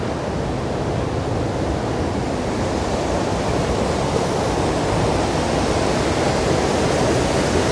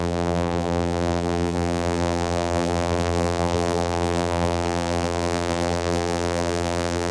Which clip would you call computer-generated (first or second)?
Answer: second